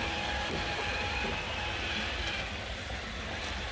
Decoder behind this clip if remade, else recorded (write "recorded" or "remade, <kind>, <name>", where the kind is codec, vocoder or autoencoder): recorded